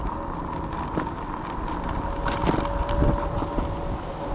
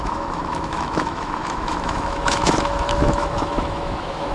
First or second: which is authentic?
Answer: first